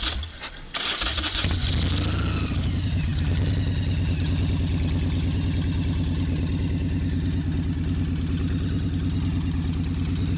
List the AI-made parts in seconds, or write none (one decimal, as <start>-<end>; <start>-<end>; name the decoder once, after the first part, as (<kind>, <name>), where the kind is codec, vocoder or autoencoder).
1.1-1.7 (vocoder, Vocos)